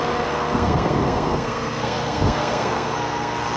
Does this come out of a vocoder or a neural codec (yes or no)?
yes